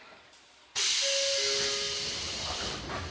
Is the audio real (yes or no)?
yes